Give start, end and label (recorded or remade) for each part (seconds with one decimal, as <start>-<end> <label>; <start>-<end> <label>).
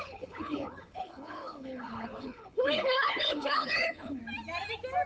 0.0-4.2 remade; 4.2-5.1 recorded